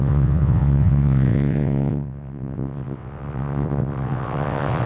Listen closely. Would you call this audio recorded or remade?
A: remade